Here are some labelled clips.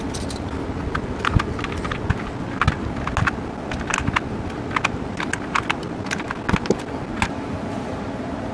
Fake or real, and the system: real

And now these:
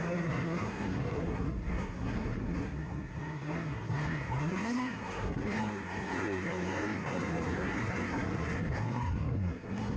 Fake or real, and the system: fake, codec, SNAC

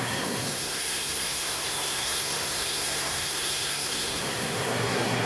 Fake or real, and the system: fake, codec, SNAC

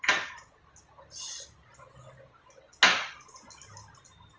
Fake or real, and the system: real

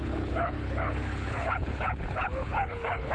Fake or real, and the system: fake, codec, HILCodec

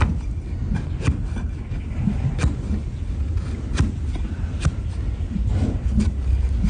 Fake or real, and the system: real